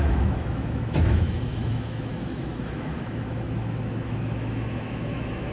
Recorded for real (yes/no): no